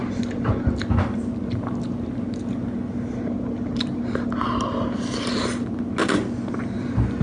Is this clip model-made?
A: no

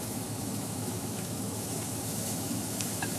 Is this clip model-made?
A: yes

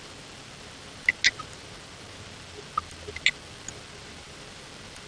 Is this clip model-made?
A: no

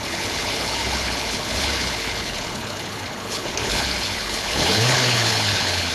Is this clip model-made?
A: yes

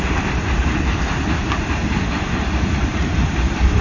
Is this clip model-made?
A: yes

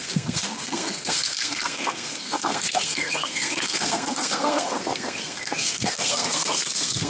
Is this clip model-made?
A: yes